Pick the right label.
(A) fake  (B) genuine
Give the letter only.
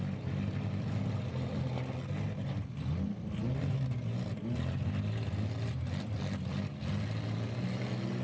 B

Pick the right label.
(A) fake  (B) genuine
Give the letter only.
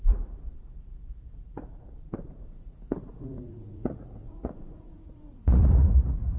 A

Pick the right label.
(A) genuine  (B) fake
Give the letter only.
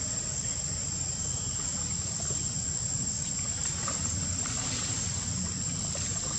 A